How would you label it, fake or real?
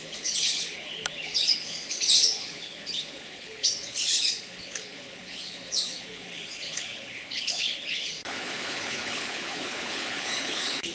fake